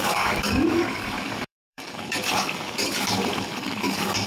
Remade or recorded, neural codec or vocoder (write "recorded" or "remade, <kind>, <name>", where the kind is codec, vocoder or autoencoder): remade, codec, DAC